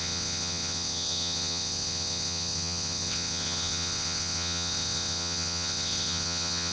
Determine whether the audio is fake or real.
fake